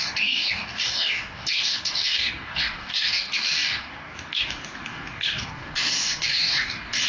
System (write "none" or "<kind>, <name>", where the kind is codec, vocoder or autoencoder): codec, DAC